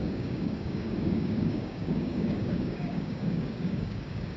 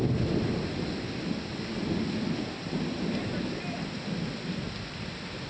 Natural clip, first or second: second